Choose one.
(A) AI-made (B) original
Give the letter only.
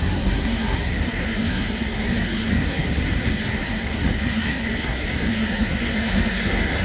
A